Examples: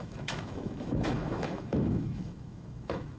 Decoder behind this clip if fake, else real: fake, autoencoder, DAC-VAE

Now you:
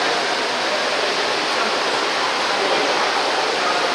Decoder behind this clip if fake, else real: real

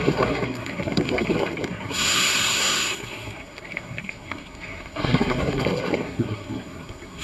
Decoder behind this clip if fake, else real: fake, codec, SNAC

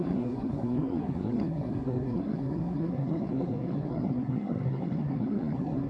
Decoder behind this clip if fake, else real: fake, codec, SNAC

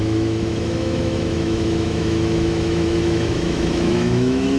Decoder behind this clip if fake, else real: fake, autoencoder, DAC-VAE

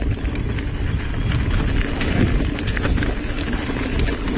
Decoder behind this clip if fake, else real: real